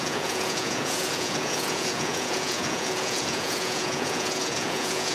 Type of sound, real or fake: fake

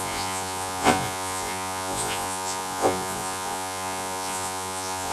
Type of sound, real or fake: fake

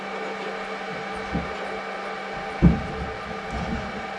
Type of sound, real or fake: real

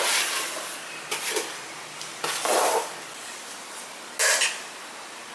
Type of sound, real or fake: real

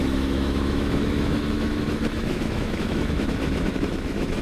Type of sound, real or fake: fake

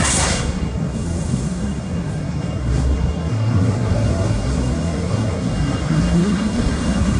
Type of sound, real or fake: fake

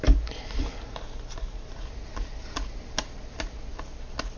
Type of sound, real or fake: real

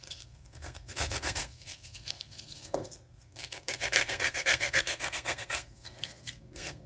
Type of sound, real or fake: fake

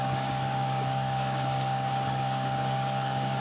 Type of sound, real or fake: fake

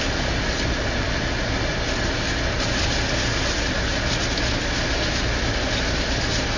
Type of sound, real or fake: real